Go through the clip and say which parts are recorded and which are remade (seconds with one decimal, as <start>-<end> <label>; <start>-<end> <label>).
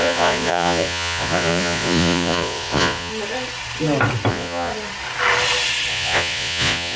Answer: 0.0-3.1 remade; 3.1-4.3 recorded; 4.3-4.7 remade; 4.7-5.9 recorded; 5.9-7.0 remade